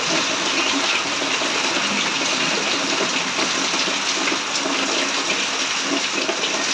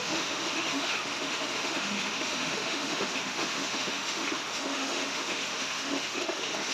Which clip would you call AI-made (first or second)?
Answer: second